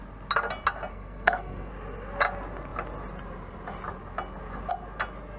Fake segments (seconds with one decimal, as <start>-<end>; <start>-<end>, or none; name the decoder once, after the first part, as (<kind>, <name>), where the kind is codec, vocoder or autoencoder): 0.9-1.7 (codec, SNAC)